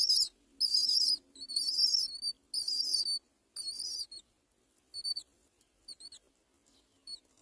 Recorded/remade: recorded